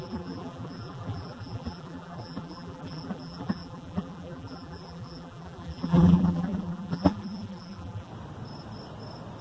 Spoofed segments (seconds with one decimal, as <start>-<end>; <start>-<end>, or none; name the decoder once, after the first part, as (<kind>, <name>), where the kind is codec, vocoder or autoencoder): 0.0-8.1 (vocoder, BigVGAN v2)